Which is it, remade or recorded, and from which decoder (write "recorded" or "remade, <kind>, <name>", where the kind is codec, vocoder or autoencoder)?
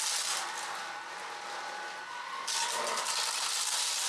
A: recorded